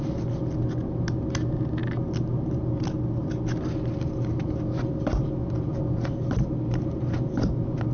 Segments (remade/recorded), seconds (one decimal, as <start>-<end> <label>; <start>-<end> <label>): 0.0-7.9 recorded

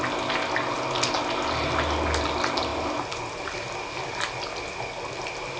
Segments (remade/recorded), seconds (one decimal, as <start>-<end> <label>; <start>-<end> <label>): 0.0-5.6 recorded

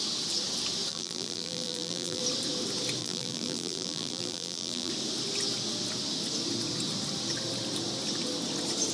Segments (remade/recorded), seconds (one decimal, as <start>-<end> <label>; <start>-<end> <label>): 0.0-0.9 recorded; 0.9-2.2 remade; 2.2-3.0 recorded; 3.0-4.9 remade; 4.9-8.9 recorded

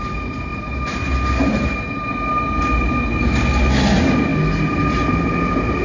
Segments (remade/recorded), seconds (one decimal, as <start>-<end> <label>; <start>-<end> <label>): 0.0-0.5 recorded; 0.5-2.1 remade; 2.1-5.8 recorded

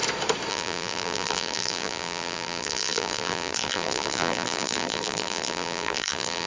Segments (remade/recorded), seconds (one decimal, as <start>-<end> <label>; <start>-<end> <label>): 0.0-0.5 recorded; 0.5-6.5 remade

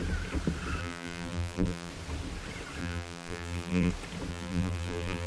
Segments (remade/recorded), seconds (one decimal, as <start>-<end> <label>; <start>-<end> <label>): 0.0-0.8 recorded; 0.8-1.9 remade; 1.9-2.8 recorded; 2.8-3.9 remade; 3.9-4.3 recorded; 4.3-5.3 remade

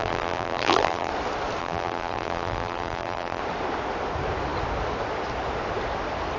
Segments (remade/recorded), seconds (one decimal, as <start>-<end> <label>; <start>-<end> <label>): 0.0-1.1 remade; 1.1-1.6 recorded; 1.6-3.4 remade; 3.4-6.4 recorded

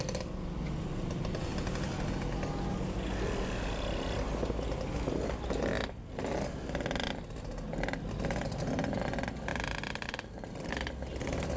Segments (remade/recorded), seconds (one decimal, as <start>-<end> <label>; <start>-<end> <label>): 0.0-9.5 recorded; 9.5-10.7 remade; 10.7-11.6 recorded